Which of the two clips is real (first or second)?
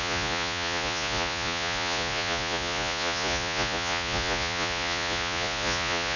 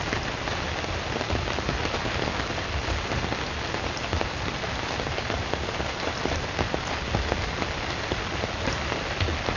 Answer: second